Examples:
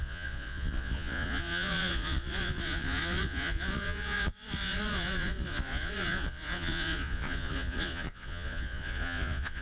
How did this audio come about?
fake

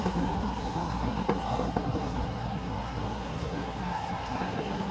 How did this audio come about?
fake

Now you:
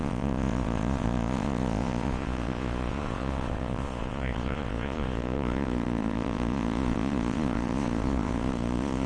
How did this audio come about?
fake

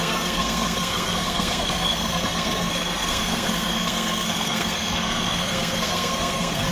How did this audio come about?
fake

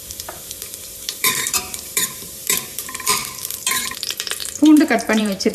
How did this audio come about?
fake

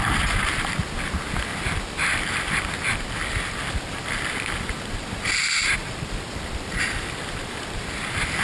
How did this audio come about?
fake